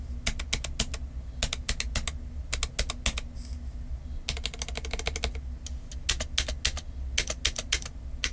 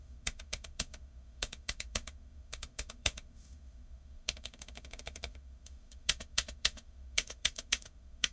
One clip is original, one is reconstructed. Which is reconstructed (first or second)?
second